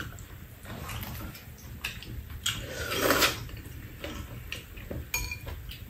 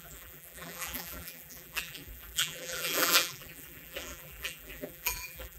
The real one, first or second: first